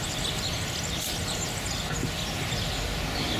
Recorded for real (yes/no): yes